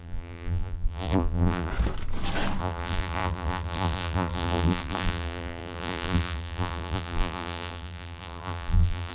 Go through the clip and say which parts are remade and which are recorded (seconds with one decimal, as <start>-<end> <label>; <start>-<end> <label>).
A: 0.0-1.7 remade; 1.7-2.6 recorded; 2.6-9.1 remade